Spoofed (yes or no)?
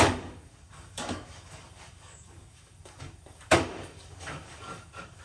yes